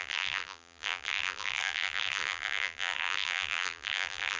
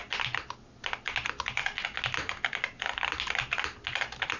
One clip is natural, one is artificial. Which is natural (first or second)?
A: second